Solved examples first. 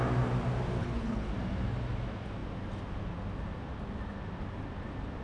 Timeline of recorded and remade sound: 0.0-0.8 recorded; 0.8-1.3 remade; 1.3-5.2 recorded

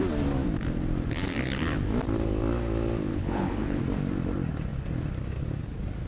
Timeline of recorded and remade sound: 0.0-3.1 recorded; 3.1-3.8 remade; 3.8-6.1 recorded

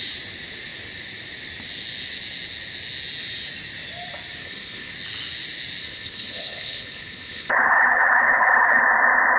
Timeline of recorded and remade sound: 0.0-4.4 recorded; 4.4-4.9 remade; 4.9-5.8 recorded; 5.8-8.8 remade; 8.8-9.4 recorded

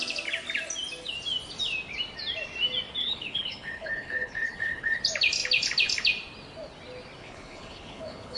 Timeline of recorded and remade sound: 0.0-3.0 recorded; 3.0-5.0 remade; 5.0-7.2 recorded; 7.2-8.4 remade

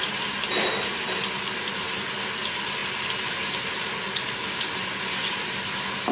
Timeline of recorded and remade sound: 0.0-6.1 recorded